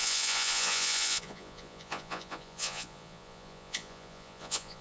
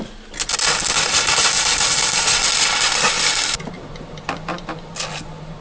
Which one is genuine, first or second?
second